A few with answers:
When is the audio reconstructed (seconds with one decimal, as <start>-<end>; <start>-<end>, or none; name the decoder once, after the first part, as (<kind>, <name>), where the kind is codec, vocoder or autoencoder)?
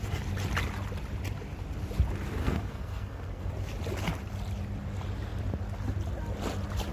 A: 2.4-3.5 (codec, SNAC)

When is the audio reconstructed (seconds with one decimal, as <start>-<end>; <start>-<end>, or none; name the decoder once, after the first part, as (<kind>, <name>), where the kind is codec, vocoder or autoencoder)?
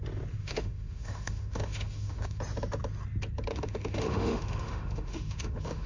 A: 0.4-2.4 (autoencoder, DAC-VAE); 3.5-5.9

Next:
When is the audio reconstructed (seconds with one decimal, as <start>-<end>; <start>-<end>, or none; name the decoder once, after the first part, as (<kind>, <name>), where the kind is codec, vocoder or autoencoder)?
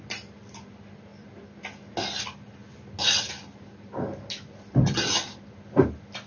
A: none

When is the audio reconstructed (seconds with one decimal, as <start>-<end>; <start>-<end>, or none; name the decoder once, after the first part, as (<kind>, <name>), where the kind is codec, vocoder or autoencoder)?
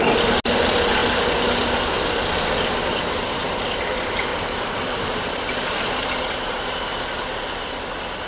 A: 4.3-5.3 (vocoder, BigVGAN v2)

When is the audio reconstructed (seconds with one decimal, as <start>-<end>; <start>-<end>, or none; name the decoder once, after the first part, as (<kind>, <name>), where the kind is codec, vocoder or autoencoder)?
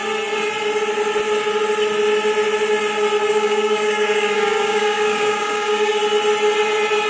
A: 3.3-6.0 (codec, DAC)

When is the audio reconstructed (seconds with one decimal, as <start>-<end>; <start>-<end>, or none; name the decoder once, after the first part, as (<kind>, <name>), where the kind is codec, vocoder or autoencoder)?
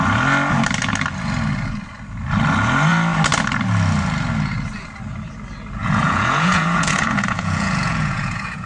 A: 5.8-8.7 (vocoder, Vocos)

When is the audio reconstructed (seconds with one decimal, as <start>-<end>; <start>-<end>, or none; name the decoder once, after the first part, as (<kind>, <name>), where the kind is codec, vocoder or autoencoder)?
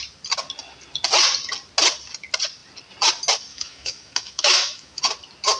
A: 3.5-5.0 (autoencoder, DAC-VAE)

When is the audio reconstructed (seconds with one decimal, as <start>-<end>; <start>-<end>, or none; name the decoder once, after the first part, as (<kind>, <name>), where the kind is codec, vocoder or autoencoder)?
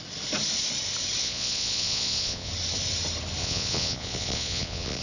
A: 1.2-2.5 (vocoder, Vocos); 3.4-5.0